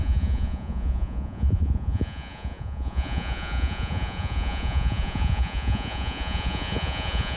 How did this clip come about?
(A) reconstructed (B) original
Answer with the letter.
A